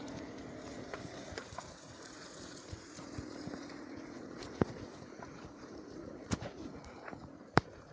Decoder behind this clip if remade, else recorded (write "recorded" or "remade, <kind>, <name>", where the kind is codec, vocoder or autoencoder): remade, vocoder, Vocos